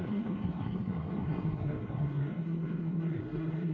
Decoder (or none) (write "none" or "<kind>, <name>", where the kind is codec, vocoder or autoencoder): codec, SNAC